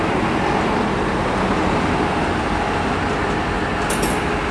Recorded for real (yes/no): yes